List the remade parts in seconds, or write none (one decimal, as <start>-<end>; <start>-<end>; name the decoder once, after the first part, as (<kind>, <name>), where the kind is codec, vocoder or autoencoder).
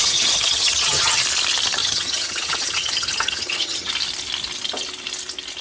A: 0.0-1.2 (vocoder, HiFi-GAN); 1.8-3.9